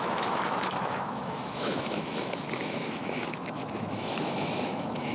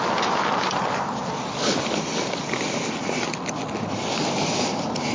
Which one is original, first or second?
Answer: second